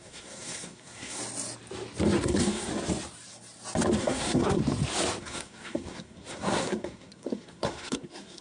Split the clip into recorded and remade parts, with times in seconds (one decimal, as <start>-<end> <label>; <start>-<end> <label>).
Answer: 0.0-1.2 remade; 1.2-2.2 recorded; 2.2-2.7 remade; 2.7-4.0 recorded; 4.0-4.6 remade; 4.6-5.2 recorded; 5.2-8.4 remade